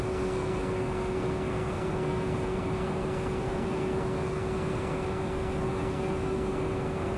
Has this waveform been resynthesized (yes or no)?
yes